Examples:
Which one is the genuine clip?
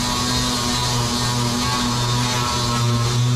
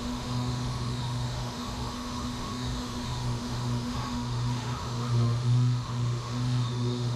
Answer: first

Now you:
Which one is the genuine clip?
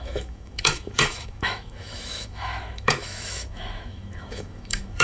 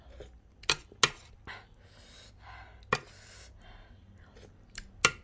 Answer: second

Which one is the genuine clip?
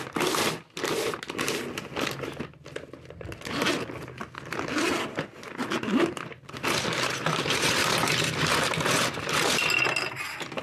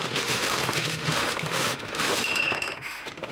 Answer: first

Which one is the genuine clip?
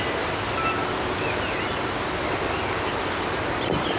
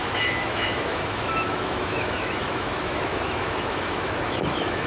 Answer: first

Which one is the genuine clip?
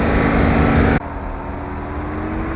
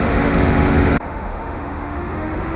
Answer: first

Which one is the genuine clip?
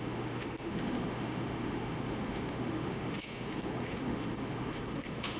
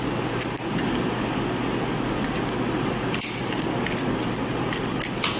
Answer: second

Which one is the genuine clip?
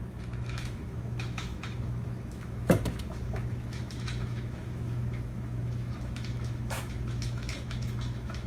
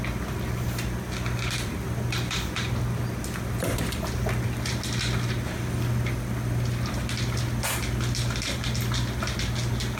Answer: second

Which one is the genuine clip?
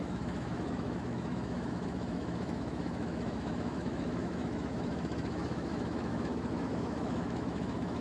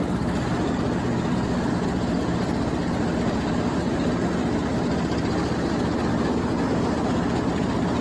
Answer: second